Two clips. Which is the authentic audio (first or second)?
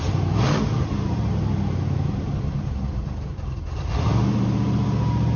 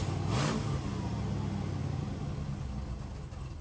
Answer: second